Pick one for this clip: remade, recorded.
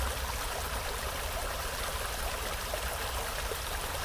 recorded